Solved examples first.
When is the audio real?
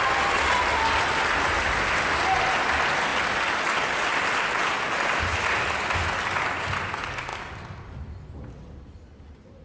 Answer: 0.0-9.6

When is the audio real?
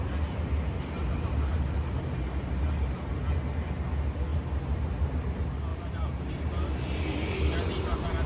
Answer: 0.0-1.0; 3.1-4.3; 4.8-5.7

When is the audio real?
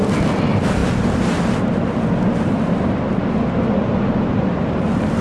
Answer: 0.0-5.2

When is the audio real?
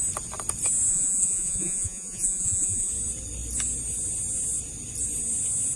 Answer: 0.0-0.9; 2.9-5.8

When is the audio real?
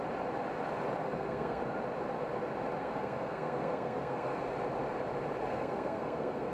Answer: 0.0-1.0; 1.6-2.8; 4.4-5.5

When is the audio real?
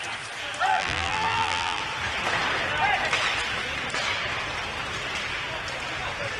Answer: 0.0-0.7; 1.8-6.4